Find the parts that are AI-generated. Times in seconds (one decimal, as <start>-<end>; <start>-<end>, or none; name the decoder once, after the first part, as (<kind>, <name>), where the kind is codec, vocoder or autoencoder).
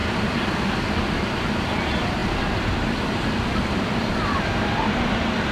0.0-2.2 (vocoder, BigVGAN v2); 2.7-5.5